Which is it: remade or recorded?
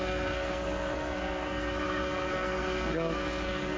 remade